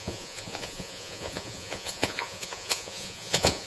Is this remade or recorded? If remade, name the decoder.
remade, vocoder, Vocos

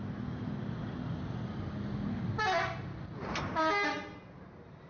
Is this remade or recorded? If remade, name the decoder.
recorded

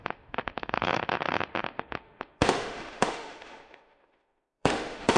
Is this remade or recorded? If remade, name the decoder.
remade, autoencoder, DAC-VAE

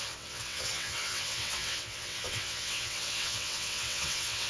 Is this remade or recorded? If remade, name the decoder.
remade, vocoder, WaveNeXt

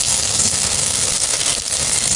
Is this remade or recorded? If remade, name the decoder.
remade, codec, SNAC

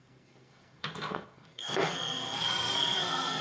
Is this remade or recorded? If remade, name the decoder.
remade, codec, SNAC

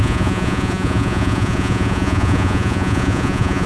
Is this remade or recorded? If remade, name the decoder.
remade, vocoder, Vocos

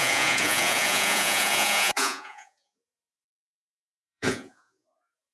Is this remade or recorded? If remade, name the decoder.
remade, vocoder, Vocos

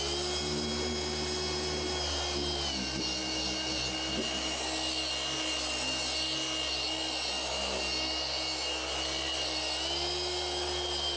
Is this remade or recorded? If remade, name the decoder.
recorded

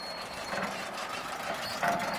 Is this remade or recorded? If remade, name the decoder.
remade, vocoder, BigVGAN v2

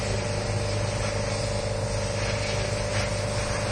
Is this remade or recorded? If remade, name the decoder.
recorded